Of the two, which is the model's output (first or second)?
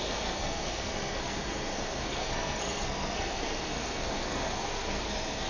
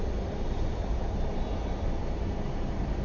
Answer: first